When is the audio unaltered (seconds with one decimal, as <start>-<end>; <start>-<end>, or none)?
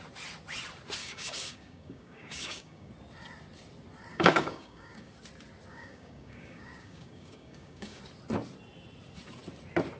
0.0-1.0; 2.9-4.1; 5.1-5.7; 8.0-10.0